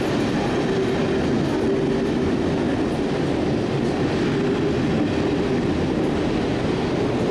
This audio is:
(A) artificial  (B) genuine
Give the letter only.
B